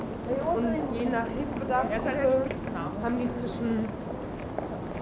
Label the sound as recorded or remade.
recorded